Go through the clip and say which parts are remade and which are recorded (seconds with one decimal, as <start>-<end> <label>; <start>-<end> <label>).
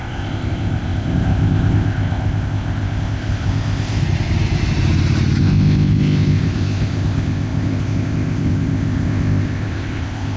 0.0-4.0 remade; 4.0-5.4 recorded; 5.4-10.4 remade